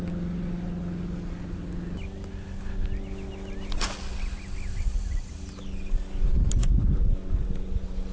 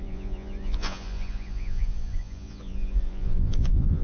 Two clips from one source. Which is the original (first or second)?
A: first